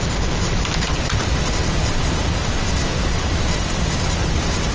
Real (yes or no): yes